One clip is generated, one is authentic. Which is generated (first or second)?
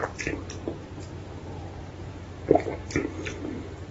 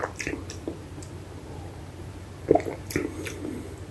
second